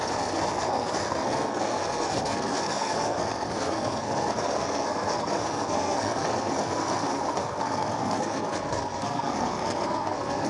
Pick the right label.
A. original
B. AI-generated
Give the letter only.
B